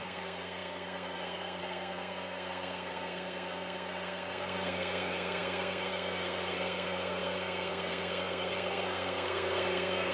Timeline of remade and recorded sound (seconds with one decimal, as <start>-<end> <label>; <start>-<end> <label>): 0.0-10.1 remade